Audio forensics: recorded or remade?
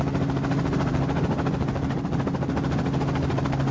recorded